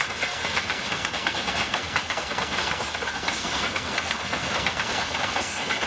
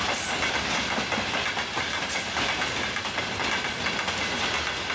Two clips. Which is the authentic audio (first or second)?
second